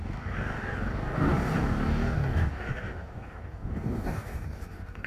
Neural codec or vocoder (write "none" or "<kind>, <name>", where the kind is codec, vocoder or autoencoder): codec, DAC